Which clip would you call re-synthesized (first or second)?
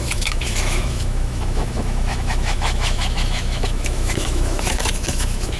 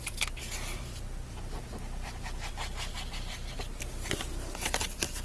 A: first